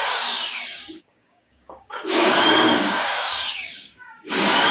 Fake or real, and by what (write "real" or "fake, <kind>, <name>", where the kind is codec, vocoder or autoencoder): fake, codec, DAC